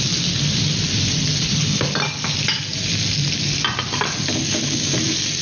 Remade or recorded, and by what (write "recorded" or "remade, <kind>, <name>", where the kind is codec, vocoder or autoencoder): recorded